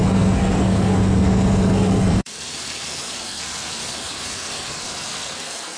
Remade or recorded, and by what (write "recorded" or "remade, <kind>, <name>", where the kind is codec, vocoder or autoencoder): remade, codec, SNAC